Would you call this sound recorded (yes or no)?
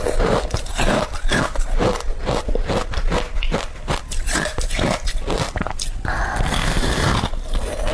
yes